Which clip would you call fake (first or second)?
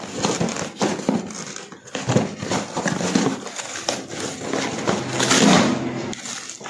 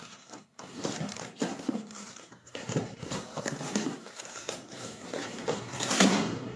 second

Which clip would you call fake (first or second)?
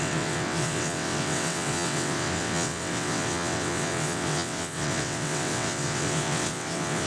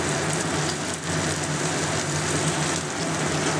first